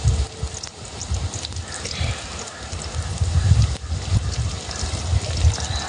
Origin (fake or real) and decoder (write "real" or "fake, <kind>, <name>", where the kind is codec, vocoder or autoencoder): real